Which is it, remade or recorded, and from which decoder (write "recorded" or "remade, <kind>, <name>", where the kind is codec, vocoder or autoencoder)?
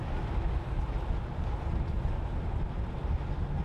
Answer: recorded